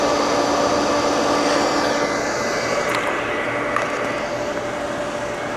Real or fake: real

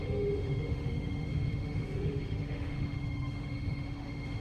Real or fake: fake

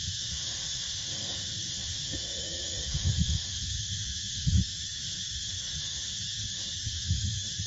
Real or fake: fake